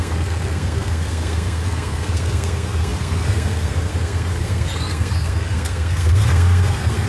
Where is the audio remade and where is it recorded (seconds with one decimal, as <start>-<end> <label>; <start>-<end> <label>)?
0.0-7.1 remade